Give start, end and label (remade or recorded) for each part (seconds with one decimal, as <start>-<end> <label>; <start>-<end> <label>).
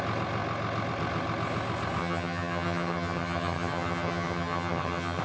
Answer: 0.0-2.0 recorded; 2.0-5.2 remade